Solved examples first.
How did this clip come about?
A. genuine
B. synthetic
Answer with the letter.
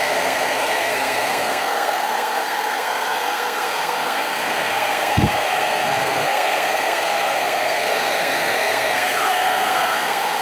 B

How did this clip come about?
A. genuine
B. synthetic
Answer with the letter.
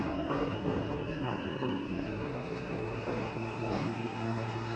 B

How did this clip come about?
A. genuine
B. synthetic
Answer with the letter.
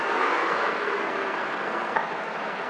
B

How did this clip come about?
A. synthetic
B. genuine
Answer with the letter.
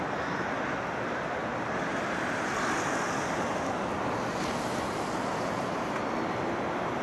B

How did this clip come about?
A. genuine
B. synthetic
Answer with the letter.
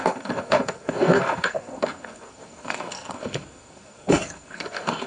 B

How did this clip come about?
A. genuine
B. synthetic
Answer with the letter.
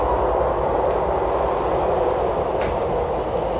A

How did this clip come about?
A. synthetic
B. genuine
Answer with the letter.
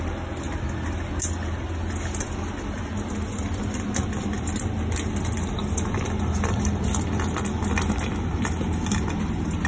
B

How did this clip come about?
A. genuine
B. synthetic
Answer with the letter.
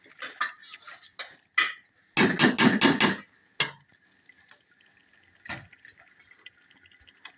A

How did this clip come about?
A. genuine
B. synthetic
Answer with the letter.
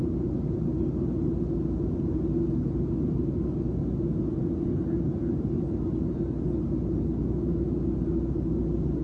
A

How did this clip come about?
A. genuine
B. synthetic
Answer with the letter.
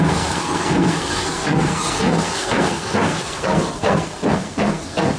B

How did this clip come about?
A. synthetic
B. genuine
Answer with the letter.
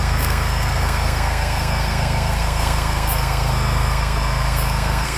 A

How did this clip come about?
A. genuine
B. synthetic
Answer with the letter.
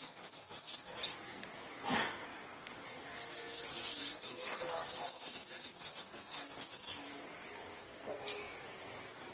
B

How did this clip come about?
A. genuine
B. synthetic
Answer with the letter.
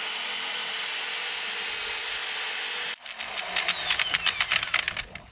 A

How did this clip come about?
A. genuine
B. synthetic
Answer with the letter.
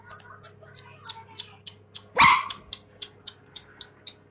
A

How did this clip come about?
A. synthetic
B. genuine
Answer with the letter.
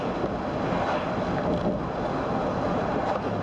B